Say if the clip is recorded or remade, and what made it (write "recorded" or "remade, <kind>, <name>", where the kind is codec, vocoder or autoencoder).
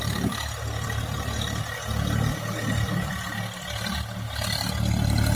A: recorded